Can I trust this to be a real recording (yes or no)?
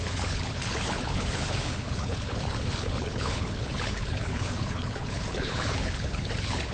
no